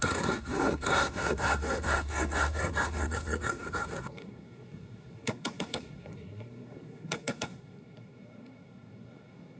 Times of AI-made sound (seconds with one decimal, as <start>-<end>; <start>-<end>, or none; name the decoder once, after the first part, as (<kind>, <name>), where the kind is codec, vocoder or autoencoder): 0.0-9.6 (codec, SNAC)